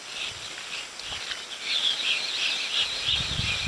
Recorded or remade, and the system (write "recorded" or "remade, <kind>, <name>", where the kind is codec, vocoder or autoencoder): recorded